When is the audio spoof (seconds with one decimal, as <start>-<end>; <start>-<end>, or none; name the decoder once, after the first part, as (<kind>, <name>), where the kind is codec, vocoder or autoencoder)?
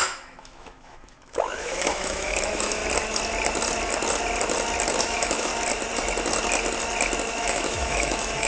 0.0-2.8 (autoencoder, DAC-VAE); 5.0-5.5; 7.4-8.5